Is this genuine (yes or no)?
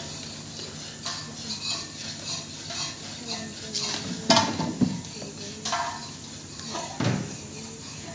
yes